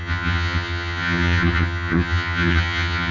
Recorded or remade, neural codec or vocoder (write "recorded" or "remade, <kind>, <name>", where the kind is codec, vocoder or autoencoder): remade, vocoder, HiFi-GAN